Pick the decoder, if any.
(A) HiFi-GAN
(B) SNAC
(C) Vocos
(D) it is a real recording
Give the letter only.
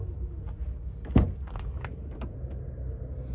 D